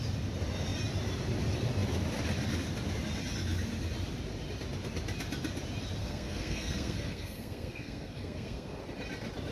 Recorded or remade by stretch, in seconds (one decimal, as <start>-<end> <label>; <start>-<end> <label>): 0.0-6.0 recorded; 6.0-8.8 remade; 8.8-9.5 recorded